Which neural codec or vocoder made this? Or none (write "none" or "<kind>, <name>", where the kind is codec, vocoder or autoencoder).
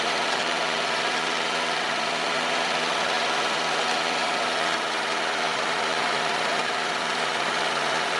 vocoder, BigVGAN v2